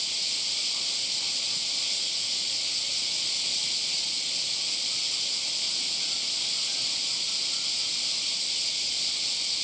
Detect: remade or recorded recorded